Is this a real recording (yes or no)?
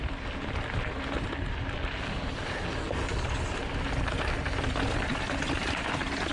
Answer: yes